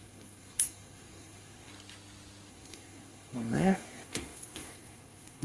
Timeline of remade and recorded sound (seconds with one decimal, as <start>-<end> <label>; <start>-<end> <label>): 0.0-1.7 remade; 1.7-2.5 recorded; 2.5-5.4 remade